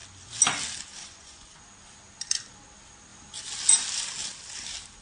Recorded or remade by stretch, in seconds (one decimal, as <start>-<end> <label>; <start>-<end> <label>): 0.0-1.0 recorded; 1.0-1.6 remade; 1.6-5.0 recorded